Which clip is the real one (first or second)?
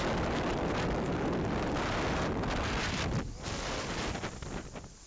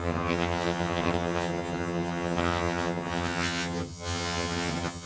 first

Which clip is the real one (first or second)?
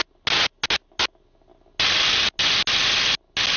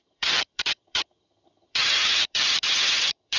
first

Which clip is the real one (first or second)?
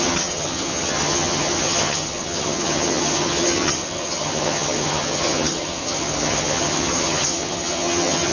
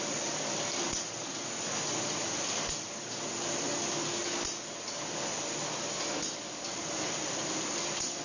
second